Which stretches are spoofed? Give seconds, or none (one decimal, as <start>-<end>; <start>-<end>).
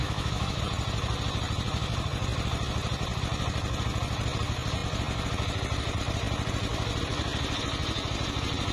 0.0-0.6